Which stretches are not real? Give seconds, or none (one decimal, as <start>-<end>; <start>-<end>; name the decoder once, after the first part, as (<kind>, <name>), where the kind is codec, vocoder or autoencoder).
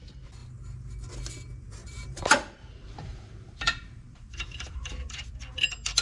1.8-5.3 (vocoder, BigVGAN v2)